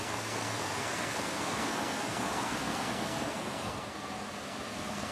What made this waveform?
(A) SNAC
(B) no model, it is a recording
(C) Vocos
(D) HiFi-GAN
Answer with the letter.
A